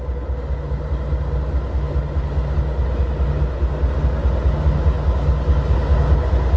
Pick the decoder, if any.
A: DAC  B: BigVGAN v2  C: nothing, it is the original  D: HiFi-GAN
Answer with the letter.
C